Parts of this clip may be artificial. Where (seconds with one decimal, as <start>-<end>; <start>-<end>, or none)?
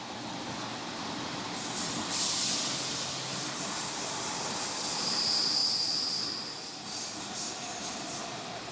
none